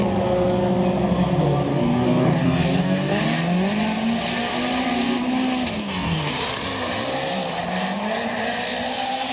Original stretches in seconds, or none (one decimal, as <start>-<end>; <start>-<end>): 0.0-1.7; 3.2-5.8; 6.3-9.3

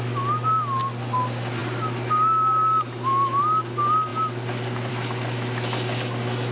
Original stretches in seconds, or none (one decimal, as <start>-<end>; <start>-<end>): 0.0-6.5

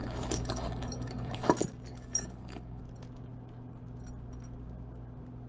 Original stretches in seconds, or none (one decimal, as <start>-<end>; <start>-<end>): 1.5-1.9; 2.8-5.5

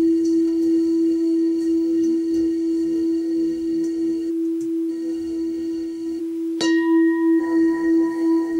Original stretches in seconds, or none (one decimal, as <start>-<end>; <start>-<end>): 4.3-4.9; 6.2-7.4

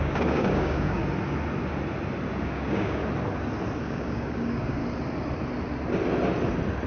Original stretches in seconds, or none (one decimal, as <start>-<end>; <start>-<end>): 1.0-2.4; 3.0-3.8; 4.8-6.9

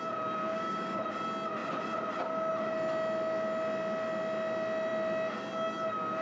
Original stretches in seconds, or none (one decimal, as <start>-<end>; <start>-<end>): 0.0-0.5; 1.0-6.2